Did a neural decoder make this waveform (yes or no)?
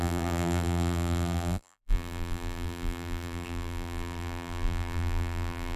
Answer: yes